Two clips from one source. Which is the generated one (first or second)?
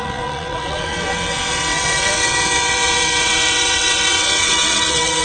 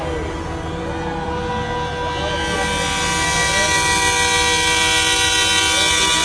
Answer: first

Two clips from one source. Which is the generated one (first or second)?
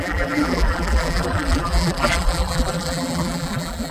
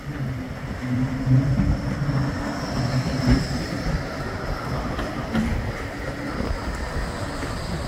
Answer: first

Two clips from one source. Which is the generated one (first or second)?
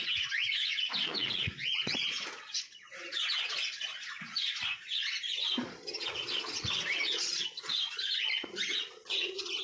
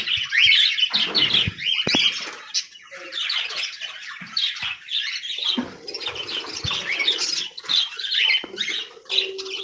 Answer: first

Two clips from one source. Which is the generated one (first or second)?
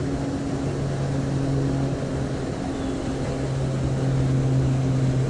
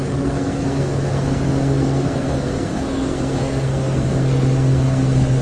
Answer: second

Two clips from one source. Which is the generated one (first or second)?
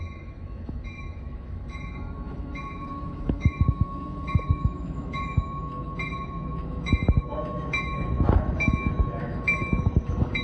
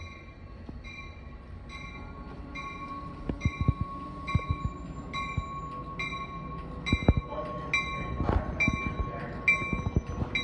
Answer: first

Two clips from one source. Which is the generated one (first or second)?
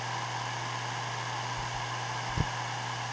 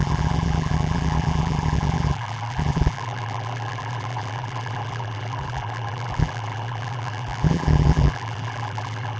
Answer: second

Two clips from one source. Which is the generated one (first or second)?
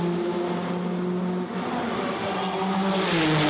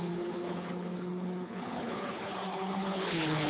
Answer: second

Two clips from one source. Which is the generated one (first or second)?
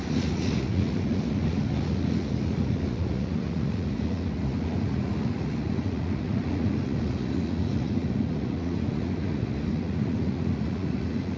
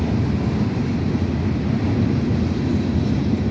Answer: first